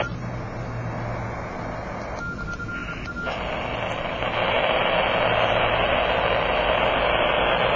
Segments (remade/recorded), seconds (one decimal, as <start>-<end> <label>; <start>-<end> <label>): 0.0-7.8 recorded